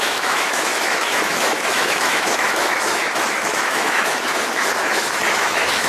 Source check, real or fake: fake